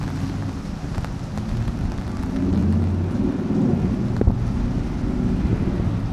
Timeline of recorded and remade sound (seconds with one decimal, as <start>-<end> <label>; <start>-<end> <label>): 0.0-0.4 recorded; 0.4-1.1 remade; 1.1-6.1 recorded